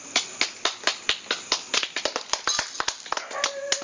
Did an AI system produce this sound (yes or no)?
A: no